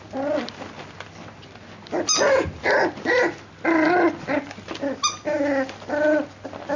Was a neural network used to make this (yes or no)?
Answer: no